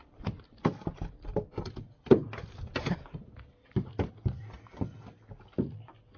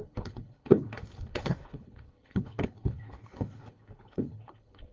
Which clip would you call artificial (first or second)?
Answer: second